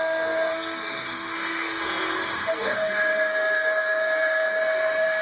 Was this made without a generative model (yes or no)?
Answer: no